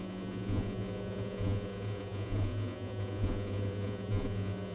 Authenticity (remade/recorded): remade